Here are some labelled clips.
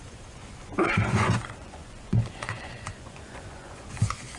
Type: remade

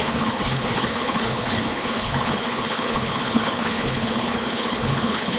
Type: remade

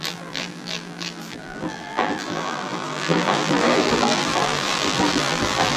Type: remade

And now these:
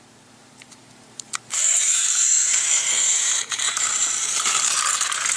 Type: remade